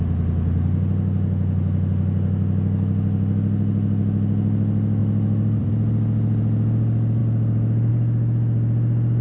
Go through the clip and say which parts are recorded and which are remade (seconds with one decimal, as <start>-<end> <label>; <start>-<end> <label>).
0.0-5.0 recorded; 5.0-5.7 remade; 5.7-7.2 recorded; 7.2-7.9 remade; 7.9-9.2 recorded